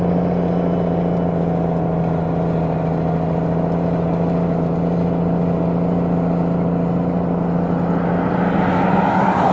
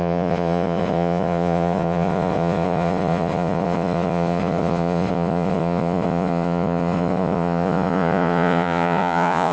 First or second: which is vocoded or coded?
second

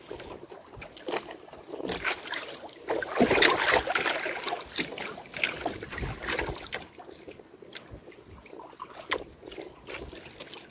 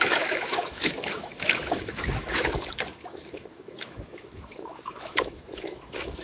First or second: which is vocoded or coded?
second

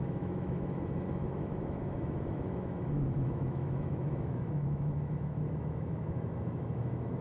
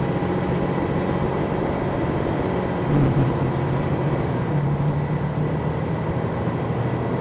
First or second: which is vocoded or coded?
first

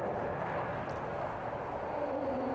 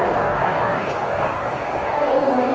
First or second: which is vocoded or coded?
second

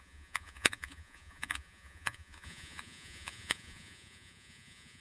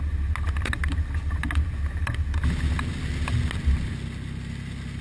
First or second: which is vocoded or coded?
first